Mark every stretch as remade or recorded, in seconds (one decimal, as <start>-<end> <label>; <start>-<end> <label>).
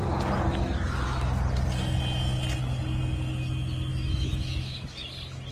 0.0-3.9 recorded; 3.9-5.1 remade; 5.1-5.5 recorded